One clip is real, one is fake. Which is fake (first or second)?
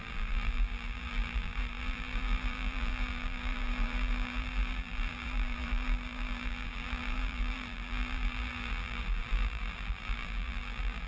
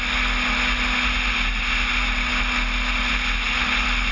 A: first